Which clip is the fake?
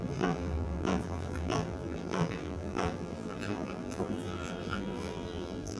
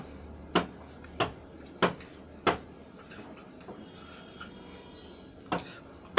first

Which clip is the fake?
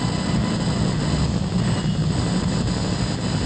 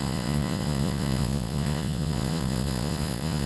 second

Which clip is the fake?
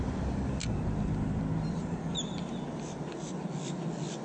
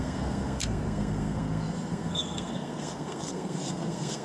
second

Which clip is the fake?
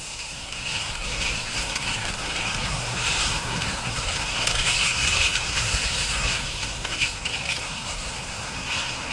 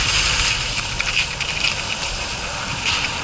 first